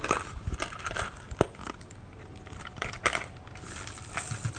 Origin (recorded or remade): recorded